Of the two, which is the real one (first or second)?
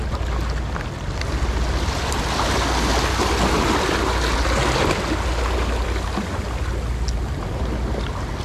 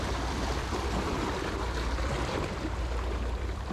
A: first